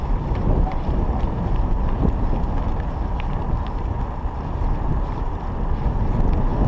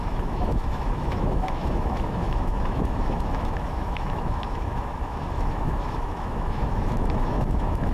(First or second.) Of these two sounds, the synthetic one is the second